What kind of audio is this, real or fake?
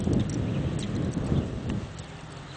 real